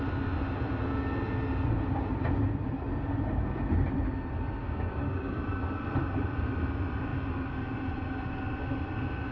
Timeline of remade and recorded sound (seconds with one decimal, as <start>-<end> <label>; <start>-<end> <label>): 0.0-4.6 recorded; 4.6-5.6 remade; 5.6-9.3 recorded